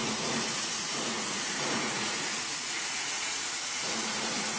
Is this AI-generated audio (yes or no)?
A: yes